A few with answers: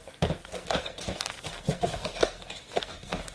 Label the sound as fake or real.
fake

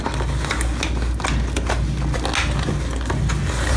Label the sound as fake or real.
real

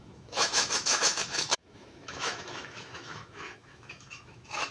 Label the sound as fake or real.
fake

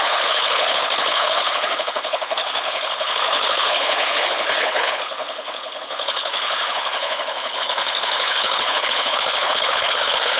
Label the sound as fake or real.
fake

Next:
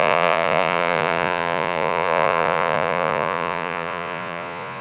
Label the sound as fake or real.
fake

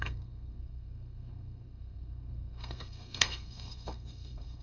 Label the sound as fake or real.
fake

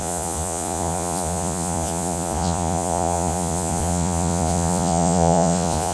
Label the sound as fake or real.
fake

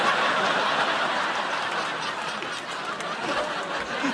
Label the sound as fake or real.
real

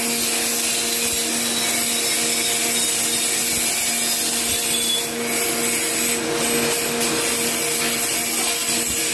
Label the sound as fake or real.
real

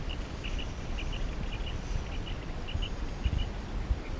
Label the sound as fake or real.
real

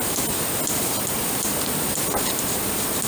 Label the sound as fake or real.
real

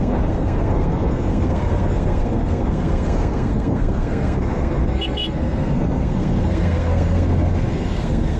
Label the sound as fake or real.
fake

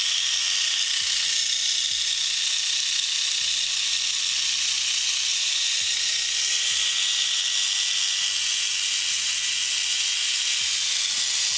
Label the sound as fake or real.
real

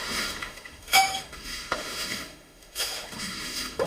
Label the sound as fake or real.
fake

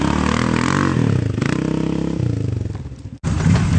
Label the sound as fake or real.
real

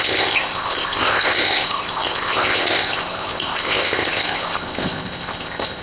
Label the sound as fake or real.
fake